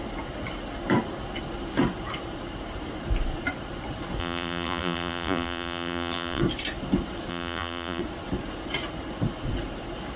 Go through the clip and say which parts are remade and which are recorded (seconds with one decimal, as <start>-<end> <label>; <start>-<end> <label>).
0.0-4.2 recorded; 4.2-6.4 remade; 6.4-7.3 recorded; 7.3-8.0 remade; 8.0-10.2 recorded